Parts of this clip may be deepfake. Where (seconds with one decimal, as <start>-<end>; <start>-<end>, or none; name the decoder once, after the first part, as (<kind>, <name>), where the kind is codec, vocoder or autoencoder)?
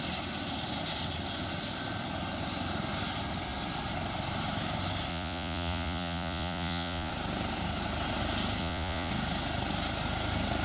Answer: 5.1-7.1 (vocoder, Vocos); 8.6-9.1